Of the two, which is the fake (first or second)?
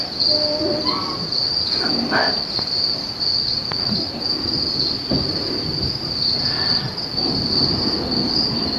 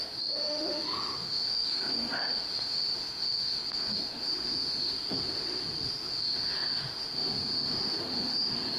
second